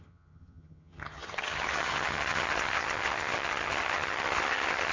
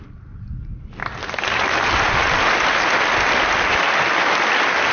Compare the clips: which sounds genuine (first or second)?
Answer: second